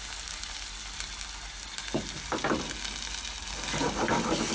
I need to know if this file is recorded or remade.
recorded